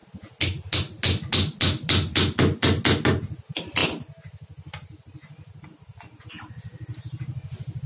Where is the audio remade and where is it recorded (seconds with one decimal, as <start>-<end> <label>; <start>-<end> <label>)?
0.0-7.9 recorded